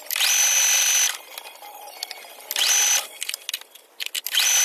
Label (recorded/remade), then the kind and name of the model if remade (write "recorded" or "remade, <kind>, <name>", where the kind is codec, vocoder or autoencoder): recorded